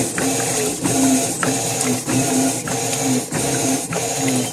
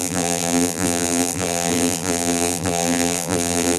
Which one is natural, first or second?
first